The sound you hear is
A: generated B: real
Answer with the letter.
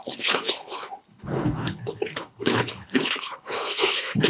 A